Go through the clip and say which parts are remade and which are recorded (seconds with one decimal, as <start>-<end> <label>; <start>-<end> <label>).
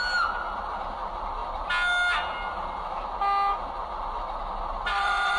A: 0.0-4.9 recorded; 4.9-5.4 remade